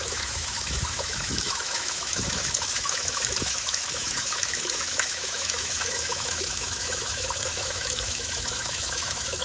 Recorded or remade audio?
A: remade